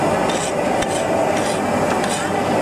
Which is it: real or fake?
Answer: real